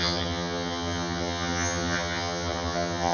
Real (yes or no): no